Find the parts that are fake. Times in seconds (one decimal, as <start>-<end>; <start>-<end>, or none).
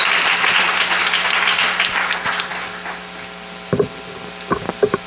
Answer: none